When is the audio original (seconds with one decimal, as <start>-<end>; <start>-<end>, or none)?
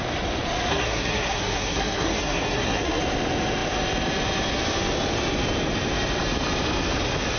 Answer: 0.0-0.7; 3.0-7.4